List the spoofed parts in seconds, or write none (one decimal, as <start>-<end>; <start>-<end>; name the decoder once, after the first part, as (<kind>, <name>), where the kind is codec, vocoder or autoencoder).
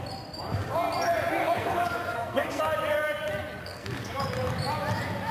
1.4-2.6 (codec, SNAC); 3.6-4.2